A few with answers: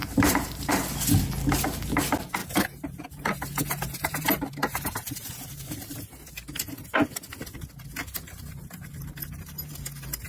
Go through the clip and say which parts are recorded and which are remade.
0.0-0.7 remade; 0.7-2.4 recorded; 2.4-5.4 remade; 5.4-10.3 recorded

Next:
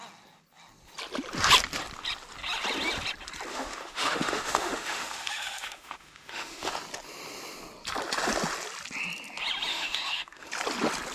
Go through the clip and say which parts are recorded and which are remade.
0.0-3.5 recorded; 3.5-6.7 remade; 6.7-9.7 recorded; 9.7-10.5 remade; 10.5-11.1 recorded

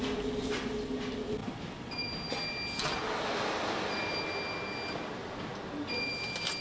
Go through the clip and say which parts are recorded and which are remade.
0.0-6.6 recorded

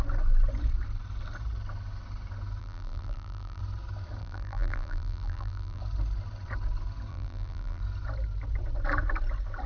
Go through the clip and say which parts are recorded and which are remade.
0.0-2.6 recorded; 2.6-3.6 remade; 3.6-4.2 recorded; 4.2-5.8 remade; 5.8-7.1 recorded; 7.1-7.8 remade; 7.8-9.7 recorded

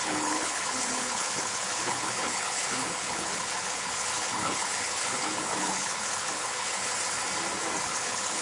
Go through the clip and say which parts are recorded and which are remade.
0.0-6.9 remade; 6.9-7.8 recorded; 7.8-8.4 remade